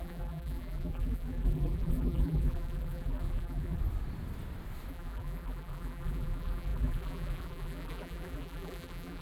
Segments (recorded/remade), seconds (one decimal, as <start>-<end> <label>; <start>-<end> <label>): 0.0-3.8 remade; 3.8-4.9 recorded; 4.9-9.2 remade